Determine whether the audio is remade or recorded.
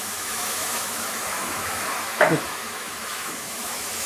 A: remade